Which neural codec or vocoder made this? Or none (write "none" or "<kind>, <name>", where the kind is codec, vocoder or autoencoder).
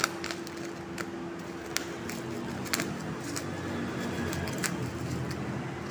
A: none